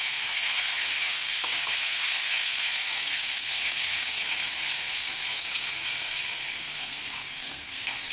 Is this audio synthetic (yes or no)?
yes